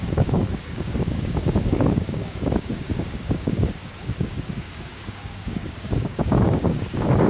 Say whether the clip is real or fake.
fake